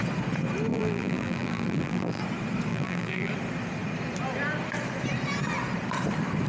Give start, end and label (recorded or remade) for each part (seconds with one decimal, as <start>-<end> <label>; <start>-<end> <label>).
0.0-0.7 recorded; 0.7-2.2 remade; 2.2-2.7 recorded; 2.7-3.3 remade; 3.3-6.5 recorded